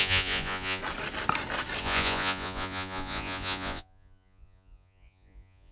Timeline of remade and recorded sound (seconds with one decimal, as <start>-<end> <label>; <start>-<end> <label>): 0.0-0.8 remade; 0.8-1.8 recorded; 1.8-5.7 remade